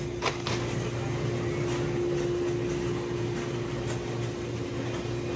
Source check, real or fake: real